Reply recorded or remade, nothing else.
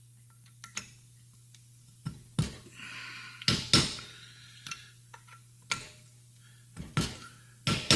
recorded